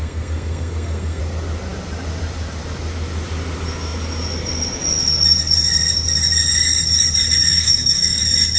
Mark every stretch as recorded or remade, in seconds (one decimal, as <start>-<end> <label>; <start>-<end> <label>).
0.0-1.2 remade; 1.2-7.5 recorded; 7.5-8.2 remade; 8.2-8.6 recorded